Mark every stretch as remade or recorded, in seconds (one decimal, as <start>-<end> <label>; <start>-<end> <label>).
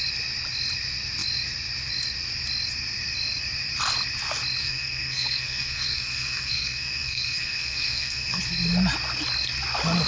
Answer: 0.0-4.6 recorded; 4.6-8.4 remade; 8.4-10.1 recorded